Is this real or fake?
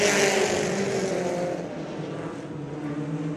real